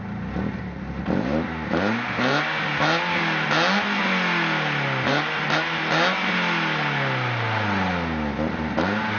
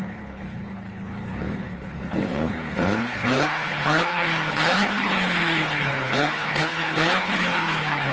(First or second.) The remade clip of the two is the second